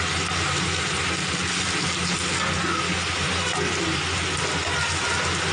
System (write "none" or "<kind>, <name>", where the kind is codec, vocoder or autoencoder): none